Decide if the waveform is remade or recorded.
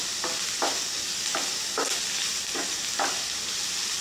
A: recorded